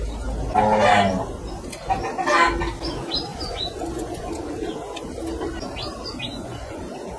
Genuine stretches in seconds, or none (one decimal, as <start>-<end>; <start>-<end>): 0.0-3.3; 4.3-6.3; 6.8-7.2